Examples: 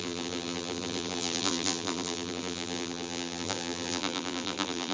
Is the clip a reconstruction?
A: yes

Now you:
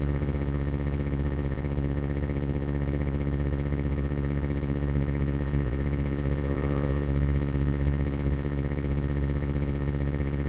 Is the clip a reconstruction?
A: yes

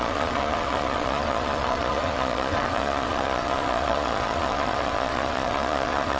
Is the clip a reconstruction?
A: yes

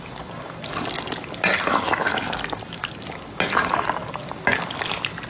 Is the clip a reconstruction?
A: no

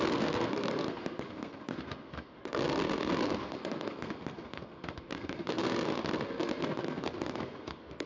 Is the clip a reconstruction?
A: yes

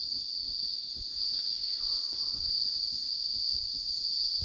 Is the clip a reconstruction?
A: yes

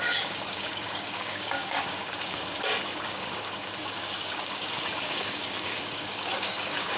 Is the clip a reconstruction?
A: yes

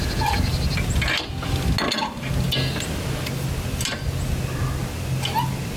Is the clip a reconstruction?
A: no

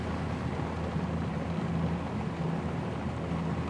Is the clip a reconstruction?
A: no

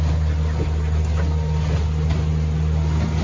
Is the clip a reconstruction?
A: no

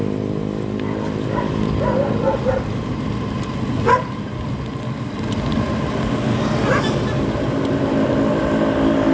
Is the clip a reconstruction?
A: no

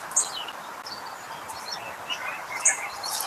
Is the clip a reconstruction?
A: no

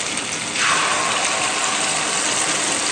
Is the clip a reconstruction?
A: no